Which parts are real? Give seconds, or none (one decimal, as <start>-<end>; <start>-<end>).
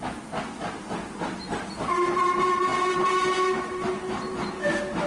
0.0-5.1